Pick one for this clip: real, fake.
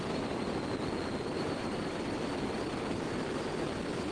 real